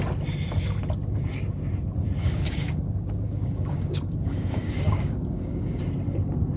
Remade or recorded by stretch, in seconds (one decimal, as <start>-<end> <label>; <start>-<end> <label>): 0.0-2.2 recorded; 2.2-5.8 remade; 5.8-6.6 recorded